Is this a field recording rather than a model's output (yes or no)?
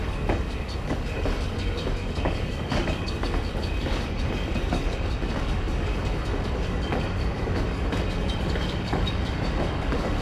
no